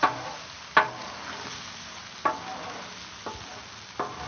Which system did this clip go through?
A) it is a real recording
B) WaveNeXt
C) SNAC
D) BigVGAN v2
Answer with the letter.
A